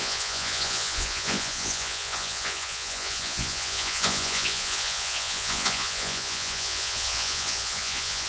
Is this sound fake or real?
fake